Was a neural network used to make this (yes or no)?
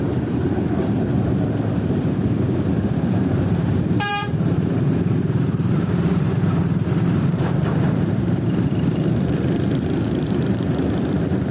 yes